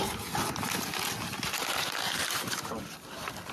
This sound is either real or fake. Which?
real